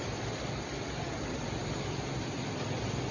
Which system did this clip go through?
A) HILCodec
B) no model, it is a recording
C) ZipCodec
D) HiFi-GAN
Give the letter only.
B